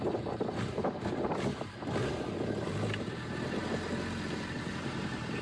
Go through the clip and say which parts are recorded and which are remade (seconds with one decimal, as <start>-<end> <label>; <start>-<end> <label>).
0.0-1.5 remade; 1.5-4.7 recorded; 4.7-5.4 remade